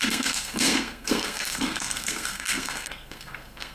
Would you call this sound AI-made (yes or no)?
yes